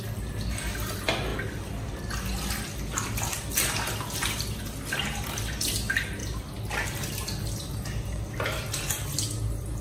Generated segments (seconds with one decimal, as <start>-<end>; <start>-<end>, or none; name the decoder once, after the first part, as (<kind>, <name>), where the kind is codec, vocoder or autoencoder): none